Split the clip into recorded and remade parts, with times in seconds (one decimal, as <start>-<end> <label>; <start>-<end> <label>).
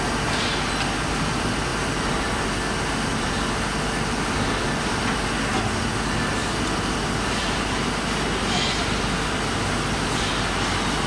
0.0-11.1 recorded